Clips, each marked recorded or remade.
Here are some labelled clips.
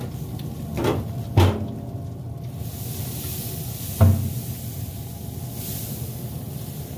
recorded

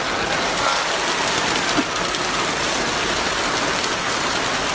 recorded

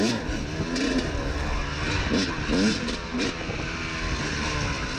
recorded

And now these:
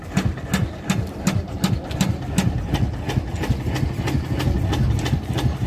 recorded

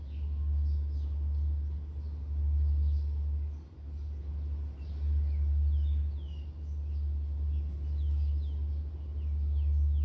recorded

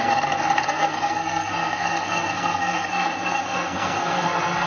remade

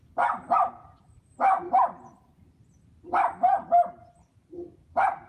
recorded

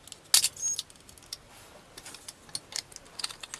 recorded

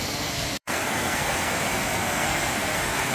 remade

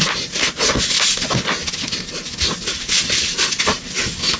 recorded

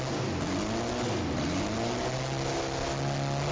recorded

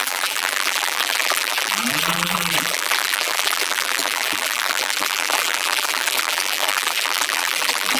remade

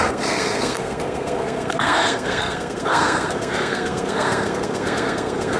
remade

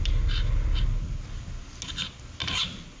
recorded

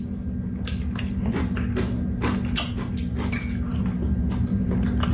recorded